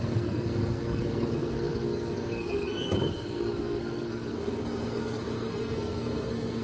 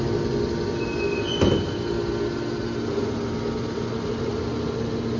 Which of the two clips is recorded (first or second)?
second